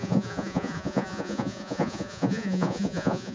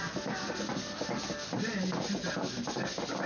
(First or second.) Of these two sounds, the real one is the second